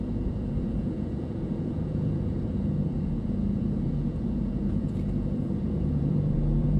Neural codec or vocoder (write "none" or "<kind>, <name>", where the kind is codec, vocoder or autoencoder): vocoder, Vocos